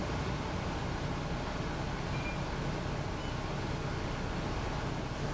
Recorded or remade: recorded